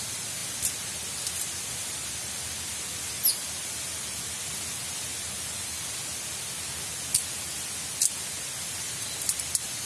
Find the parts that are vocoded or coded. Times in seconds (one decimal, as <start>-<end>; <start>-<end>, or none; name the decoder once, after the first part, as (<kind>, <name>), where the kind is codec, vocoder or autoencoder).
none